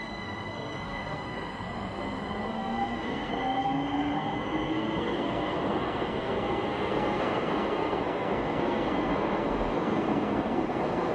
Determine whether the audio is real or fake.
fake